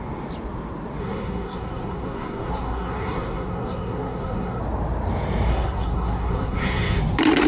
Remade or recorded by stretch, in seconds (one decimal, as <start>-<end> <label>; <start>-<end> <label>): 0.0-1.0 recorded; 1.0-4.6 remade; 4.6-5.5 recorded; 5.5-7.0 remade; 7.0-7.5 recorded